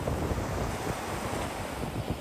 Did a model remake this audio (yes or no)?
no